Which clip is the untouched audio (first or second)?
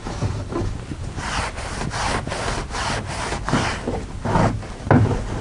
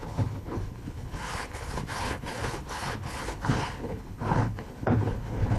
first